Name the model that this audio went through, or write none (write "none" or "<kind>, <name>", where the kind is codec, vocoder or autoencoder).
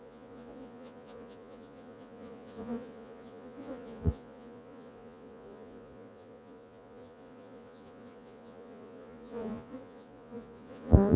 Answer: vocoder, Vocos